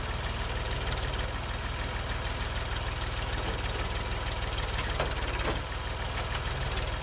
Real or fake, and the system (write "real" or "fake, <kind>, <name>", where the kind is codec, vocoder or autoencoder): real